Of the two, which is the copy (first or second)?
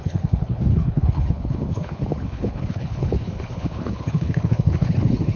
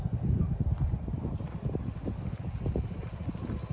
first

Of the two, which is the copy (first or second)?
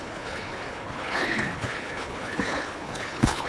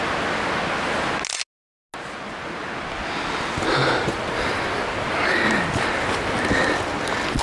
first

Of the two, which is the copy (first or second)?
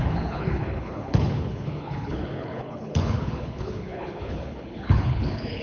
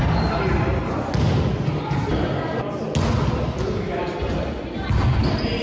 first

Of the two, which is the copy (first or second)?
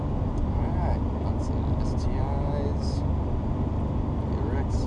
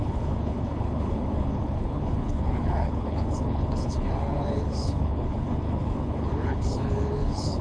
second